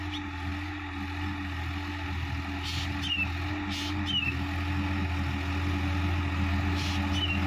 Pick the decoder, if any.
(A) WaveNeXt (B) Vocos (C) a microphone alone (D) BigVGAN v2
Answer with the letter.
C